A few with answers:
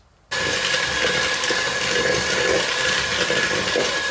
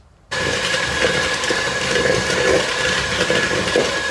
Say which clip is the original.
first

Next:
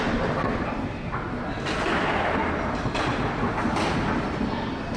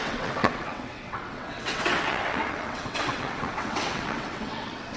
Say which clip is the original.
first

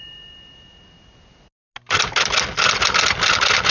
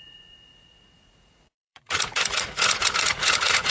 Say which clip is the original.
first